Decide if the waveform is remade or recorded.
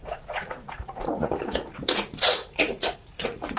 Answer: remade